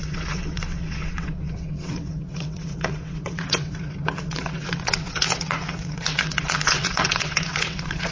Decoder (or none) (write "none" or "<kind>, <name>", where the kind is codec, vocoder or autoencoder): vocoder, WaveNeXt